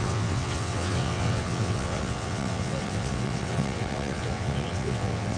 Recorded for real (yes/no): no